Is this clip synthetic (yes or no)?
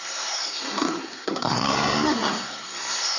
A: yes